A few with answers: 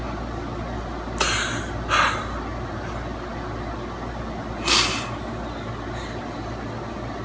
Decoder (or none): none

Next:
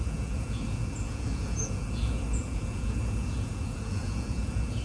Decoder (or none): vocoder, Vocos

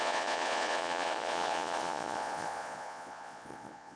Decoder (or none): vocoder, Vocos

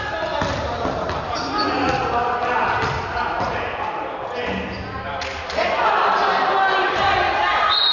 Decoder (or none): none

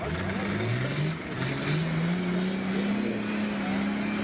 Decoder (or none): none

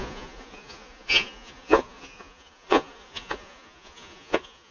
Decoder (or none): vocoder, Vocos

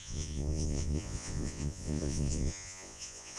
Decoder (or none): vocoder, Vocos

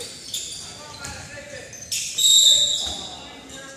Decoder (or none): none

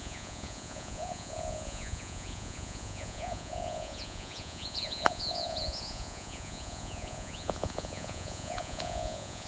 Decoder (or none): vocoder, Vocos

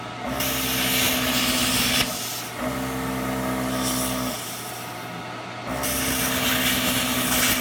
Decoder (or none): none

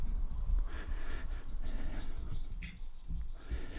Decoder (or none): none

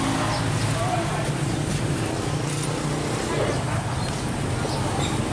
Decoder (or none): none